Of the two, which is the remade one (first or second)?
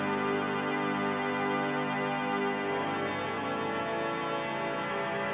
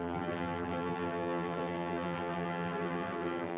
second